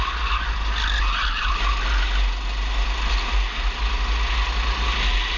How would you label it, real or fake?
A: real